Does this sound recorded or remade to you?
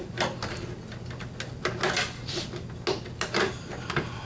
recorded